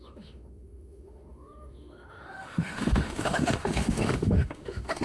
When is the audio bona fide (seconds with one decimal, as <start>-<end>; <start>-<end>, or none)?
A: none